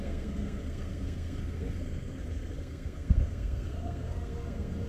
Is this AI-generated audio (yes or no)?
yes